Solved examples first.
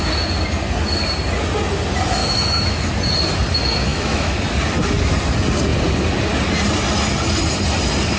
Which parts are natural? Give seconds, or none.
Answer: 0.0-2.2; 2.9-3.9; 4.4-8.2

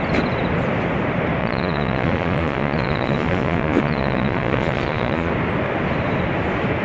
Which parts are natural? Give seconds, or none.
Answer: 0.0-1.4; 5.3-6.8